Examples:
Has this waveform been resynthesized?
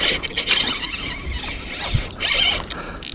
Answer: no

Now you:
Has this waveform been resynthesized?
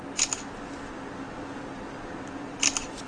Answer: no